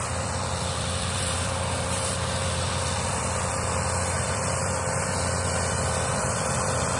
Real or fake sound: fake